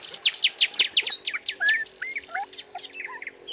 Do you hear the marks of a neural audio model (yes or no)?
no